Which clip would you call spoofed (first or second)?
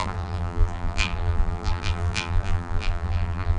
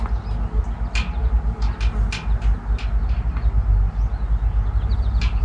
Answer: first